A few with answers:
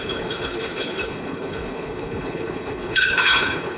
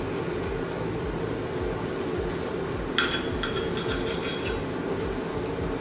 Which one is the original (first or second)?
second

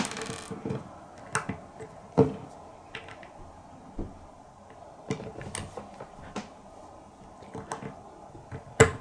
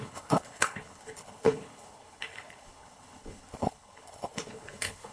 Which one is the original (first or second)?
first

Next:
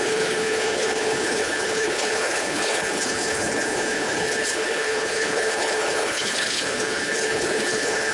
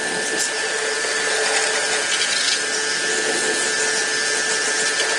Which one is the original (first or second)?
second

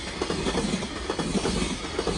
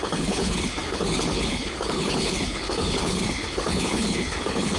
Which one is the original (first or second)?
first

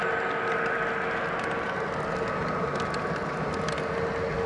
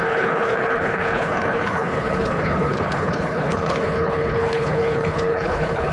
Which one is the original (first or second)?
first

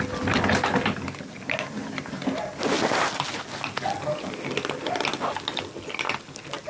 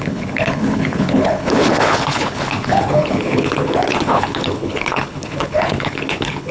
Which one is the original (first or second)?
first